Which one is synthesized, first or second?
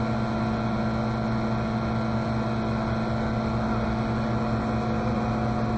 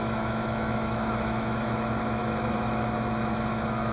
second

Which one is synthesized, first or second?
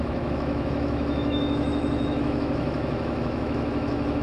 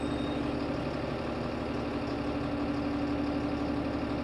first